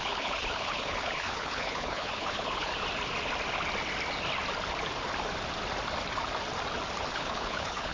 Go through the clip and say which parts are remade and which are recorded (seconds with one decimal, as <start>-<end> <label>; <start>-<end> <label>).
0.0-2.7 remade; 2.7-7.1 recorded; 7.1-7.9 remade